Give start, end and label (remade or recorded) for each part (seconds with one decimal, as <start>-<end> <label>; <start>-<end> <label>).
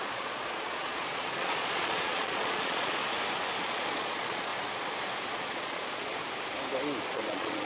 0.0-3.0 remade; 3.0-3.6 recorded; 3.6-4.5 remade; 4.5-5.3 recorded; 5.3-6.2 remade; 6.2-7.1 recorded; 7.1-7.7 remade